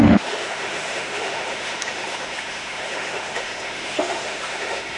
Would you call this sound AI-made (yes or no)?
yes